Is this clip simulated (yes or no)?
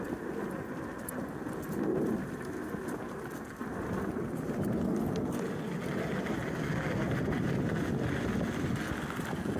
no